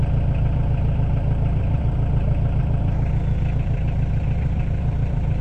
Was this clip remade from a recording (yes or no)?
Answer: yes